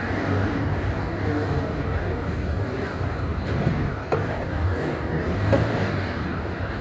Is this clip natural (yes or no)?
no